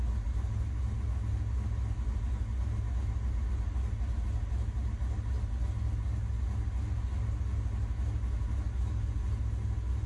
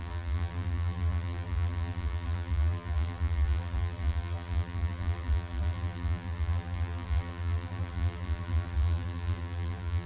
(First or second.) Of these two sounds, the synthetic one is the second